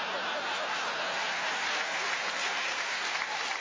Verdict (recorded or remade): recorded